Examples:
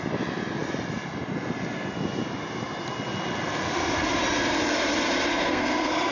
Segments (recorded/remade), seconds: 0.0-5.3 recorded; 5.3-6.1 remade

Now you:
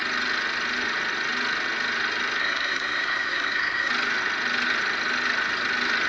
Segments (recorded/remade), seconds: 0.0-2.4 recorded; 2.4-3.9 remade; 3.9-6.1 recorded

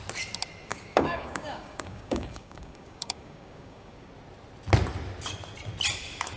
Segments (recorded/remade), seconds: 0.0-0.7 recorded; 0.7-4.1 remade; 4.1-6.4 recorded

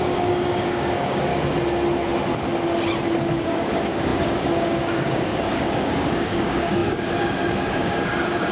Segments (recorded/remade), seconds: 0.0-1.3 remade; 1.3-3.3 recorded; 3.3-8.5 remade

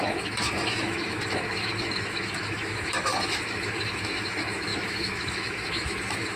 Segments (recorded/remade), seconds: 0.0-6.4 remade